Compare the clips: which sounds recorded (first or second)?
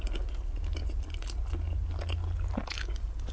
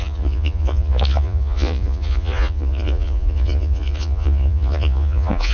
first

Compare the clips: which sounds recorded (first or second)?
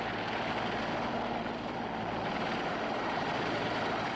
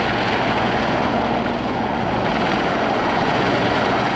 first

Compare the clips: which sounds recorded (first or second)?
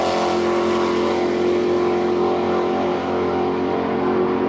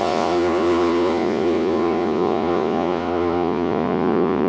first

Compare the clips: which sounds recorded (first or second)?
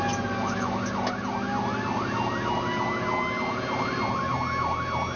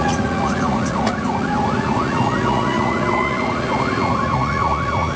first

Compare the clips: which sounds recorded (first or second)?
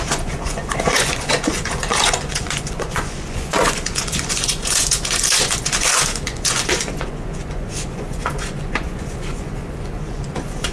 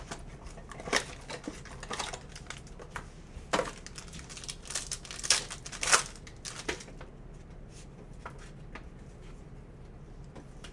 second